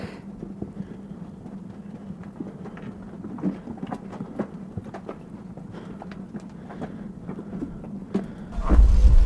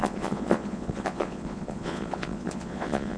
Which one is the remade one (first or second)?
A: second